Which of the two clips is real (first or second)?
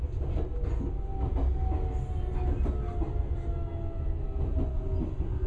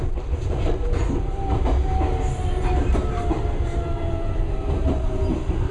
first